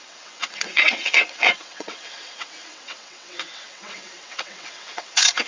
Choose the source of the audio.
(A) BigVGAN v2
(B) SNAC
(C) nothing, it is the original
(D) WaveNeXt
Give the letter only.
D